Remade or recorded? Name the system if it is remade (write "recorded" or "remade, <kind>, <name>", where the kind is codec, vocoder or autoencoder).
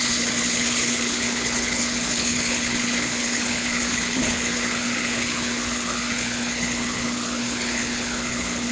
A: remade, codec, HILCodec